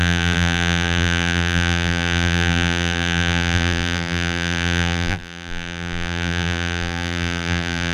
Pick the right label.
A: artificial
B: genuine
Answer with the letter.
A